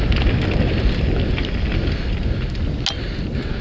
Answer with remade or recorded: recorded